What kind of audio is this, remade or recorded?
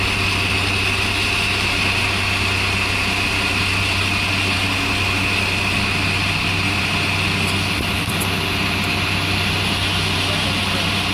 recorded